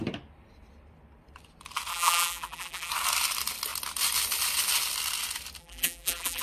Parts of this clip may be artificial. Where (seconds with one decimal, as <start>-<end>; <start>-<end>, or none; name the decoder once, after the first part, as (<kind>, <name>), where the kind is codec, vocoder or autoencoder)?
1.9-2.9 (vocoder, BigVGAN v2); 5.6-6.4